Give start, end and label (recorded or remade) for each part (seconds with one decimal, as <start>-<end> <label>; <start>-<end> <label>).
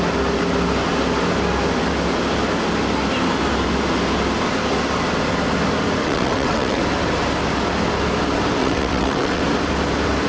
0.0-6.0 recorded; 6.0-6.8 remade; 6.8-8.6 recorded; 8.6-9.4 remade; 9.4-10.3 recorded